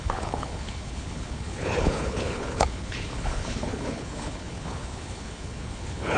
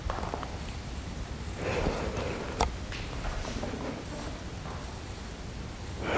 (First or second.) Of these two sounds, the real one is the second